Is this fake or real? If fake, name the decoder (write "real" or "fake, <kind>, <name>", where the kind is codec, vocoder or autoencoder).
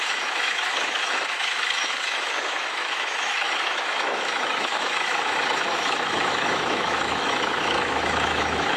fake, autoencoder, DAC-VAE